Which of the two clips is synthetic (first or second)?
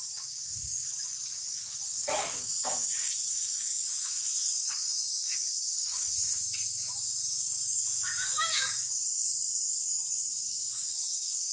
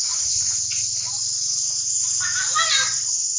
first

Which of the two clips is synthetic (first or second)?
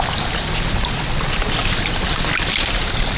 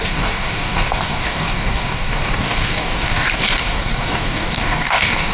second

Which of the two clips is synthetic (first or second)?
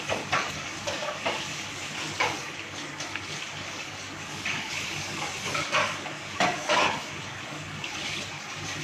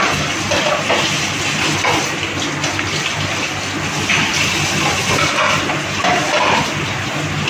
first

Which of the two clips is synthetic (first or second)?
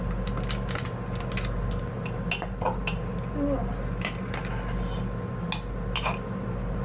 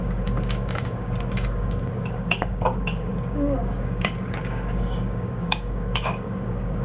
second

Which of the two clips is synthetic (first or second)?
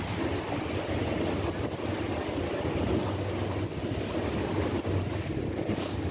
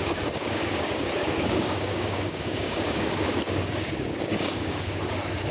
second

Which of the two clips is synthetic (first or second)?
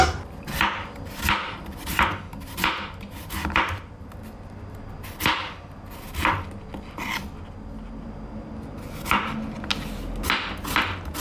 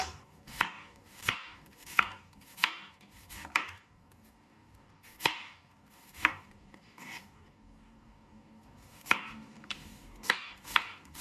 second